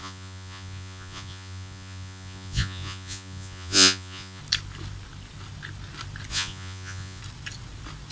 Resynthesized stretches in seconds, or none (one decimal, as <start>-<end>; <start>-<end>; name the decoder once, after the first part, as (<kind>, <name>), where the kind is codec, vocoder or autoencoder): 0.0-4.4 (vocoder, Vocos); 6.3-7.2